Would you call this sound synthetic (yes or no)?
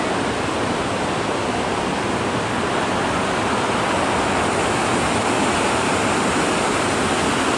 no